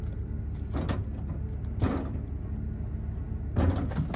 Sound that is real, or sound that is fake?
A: real